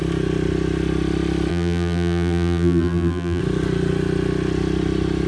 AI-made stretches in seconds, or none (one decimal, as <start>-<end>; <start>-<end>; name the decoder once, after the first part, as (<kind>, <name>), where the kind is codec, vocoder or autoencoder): 1.5-3.4 (vocoder, BigVGAN v2)